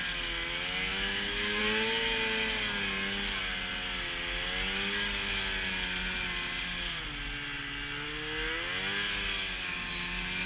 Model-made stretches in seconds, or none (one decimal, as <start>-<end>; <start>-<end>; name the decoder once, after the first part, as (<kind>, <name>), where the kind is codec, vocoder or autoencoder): 0.9-1.6 (autoencoder, DAC-VAE)